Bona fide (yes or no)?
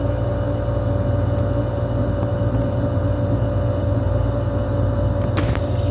yes